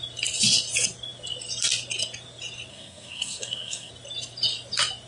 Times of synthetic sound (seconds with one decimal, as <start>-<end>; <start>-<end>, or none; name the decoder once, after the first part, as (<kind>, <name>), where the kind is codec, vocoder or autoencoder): 2.7-3.9 (codec, SNAC)